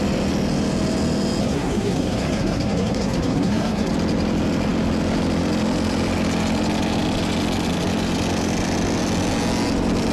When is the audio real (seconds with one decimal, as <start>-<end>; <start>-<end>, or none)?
0.0-1.4; 3.9-10.1